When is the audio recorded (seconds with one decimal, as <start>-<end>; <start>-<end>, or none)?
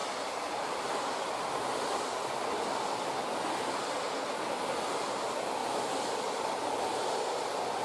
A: 2.1-5.6; 6.7-7.8